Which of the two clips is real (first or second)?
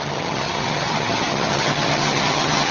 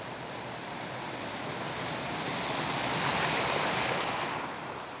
second